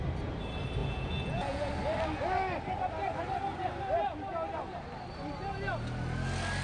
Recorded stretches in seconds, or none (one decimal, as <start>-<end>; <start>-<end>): 0.0-0.8; 1.7-6.6